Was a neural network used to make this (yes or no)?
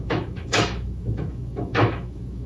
yes